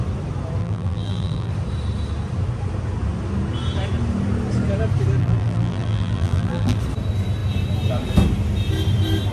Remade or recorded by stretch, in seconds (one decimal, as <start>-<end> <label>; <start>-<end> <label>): 0.0-0.6 recorded; 0.6-1.5 remade; 1.5-5.2 recorded; 5.2-6.8 remade; 6.8-9.3 recorded